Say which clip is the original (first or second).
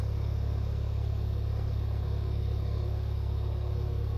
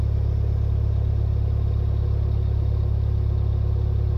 second